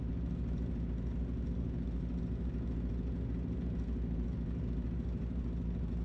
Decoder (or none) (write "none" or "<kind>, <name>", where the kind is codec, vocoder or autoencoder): none